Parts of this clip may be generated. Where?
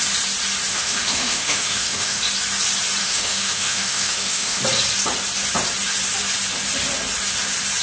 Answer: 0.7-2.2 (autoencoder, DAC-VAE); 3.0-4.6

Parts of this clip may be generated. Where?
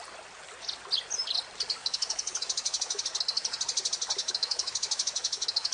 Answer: 1.8-3.0 (autoencoder, DAC-VAE); 4.2-5.7